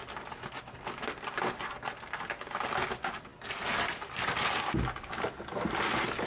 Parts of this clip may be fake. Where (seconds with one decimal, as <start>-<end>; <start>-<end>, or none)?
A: none